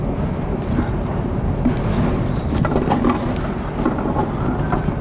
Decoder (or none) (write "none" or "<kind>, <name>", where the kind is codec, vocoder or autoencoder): none